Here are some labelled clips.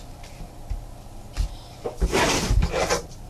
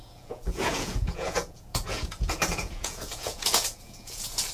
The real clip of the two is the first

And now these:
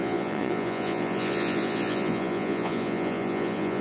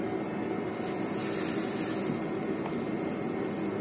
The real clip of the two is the second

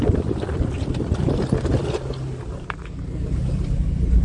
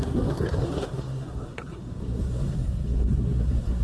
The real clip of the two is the first